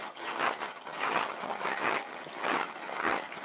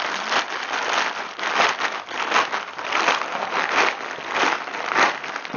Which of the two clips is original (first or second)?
second